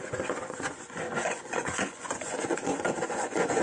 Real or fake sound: fake